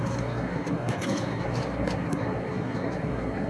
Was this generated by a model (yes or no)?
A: yes